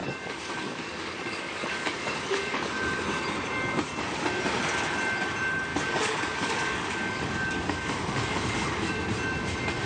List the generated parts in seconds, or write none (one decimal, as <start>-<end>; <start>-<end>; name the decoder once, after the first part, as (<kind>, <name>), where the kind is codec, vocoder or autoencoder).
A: 0.0-3.0 (codec, DAC); 5.7-8.9